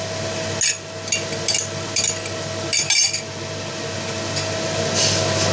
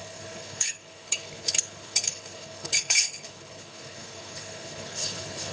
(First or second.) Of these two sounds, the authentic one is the first